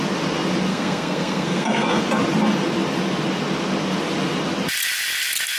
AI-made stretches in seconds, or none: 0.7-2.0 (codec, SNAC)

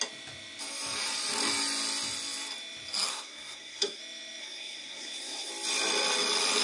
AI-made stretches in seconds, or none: 3.1-4.0 (codec, SNAC); 4.4-5.5

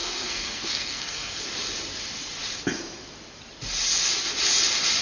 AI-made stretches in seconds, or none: 0.0-1.4 (codec, SNAC)

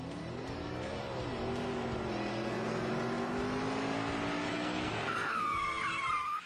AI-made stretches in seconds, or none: 2.3-2.9 (codec, SNAC); 4.5-5.8

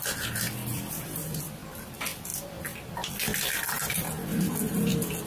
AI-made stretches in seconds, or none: none

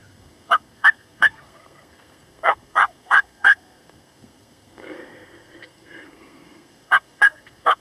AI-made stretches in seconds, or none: 0.0-7.8 (codec, SNAC)